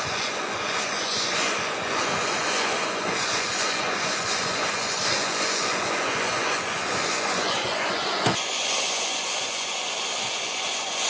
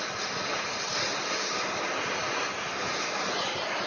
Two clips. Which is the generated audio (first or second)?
first